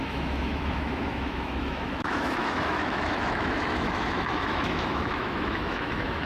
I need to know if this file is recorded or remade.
remade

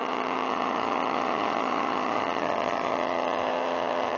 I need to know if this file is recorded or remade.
remade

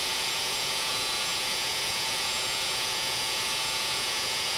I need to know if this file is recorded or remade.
remade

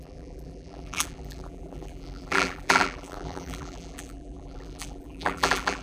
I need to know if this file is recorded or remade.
remade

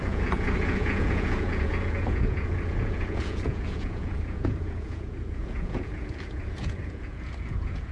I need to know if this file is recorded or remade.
remade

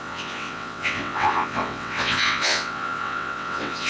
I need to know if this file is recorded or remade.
remade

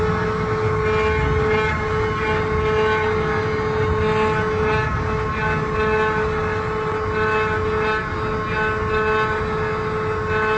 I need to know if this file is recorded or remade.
recorded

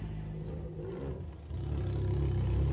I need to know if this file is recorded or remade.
recorded